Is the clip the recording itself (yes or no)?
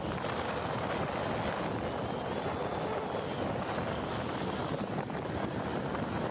yes